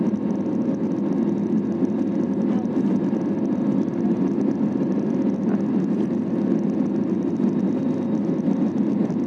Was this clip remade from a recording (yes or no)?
no